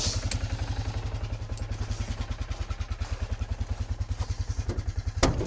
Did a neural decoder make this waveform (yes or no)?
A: no